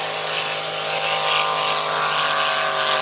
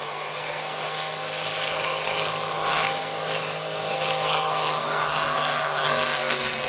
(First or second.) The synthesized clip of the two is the second